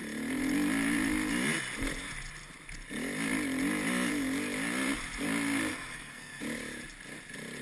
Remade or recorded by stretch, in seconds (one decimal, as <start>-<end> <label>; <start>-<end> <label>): 0.0-5.7 recorded; 5.7-6.4 remade; 6.4-7.6 recorded